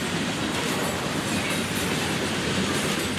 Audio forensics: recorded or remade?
recorded